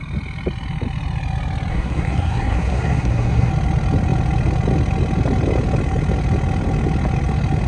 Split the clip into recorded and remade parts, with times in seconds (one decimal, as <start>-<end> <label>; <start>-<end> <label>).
0.0-1.7 recorded; 1.7-3.5 remade; 3.5-7.7 recorded

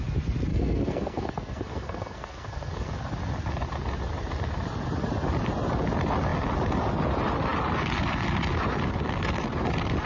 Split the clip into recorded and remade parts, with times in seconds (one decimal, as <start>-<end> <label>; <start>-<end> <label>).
0.0-0.5 recorded; 0.5-2.9 remade; 2.9-10.1 recorded

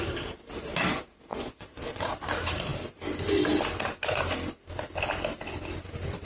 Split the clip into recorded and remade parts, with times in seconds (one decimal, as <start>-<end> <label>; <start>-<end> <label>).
0.0-1.3 recorded; 1.3-2.1 remade; 2.1-6.2 recorded

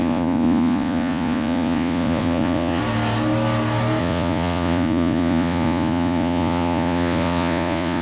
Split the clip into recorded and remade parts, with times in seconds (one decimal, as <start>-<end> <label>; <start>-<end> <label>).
0.0-2.8 remade; 2.8-4.0 recorded; 4.0-8.0 remade

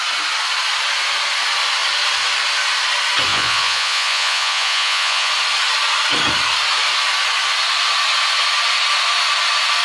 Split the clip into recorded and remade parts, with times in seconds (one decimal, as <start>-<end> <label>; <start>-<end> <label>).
0.0-3.3 recorded; 3.3-5.3 remade; 5.3-9.8 recorded